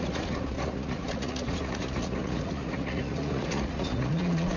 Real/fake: fake